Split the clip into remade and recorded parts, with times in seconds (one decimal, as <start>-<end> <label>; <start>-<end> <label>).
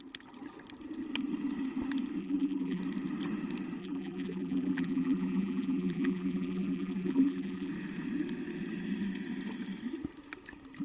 0.0-2.2 recorded; 2.2-2.8 remade; 2.8-3.8 recorded; 3.8-7.7 remade; 7.7-10.8 recorded